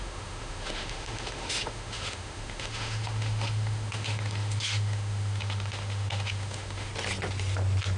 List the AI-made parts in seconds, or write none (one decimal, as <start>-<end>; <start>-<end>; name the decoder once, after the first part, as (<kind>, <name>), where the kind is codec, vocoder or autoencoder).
0.0-6.9 (autoencoder, DAC-VAE)